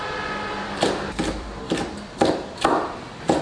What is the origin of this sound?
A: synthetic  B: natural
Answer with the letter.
A